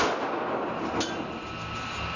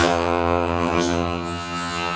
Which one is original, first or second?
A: first